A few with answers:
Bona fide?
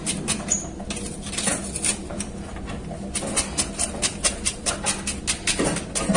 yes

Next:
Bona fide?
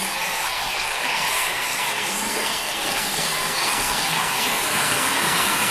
no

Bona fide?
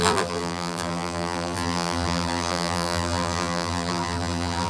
no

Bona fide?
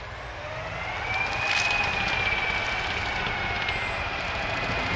yes